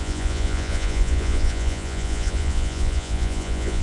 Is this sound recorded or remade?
remade